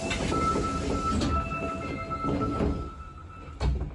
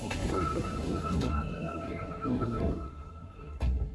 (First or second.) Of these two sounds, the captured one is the first